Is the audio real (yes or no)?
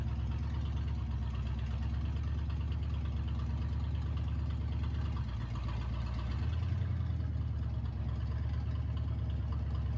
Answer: yes